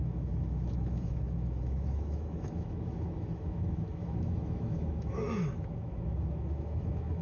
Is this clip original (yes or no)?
no